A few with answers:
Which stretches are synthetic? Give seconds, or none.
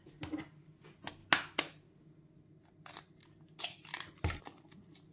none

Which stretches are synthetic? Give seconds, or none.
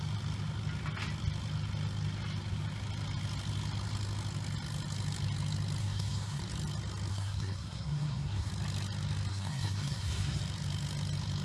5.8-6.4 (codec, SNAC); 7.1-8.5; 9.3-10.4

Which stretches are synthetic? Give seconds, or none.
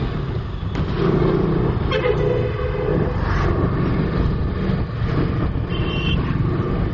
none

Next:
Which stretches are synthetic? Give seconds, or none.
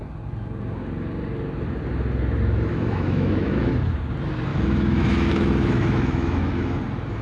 2.7-3.7 (autoencoder, DAC-VAE); 4.5-6.8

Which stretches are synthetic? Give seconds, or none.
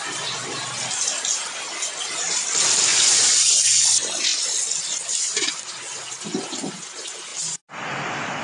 2.9-3.6 (vocoder, Vocos)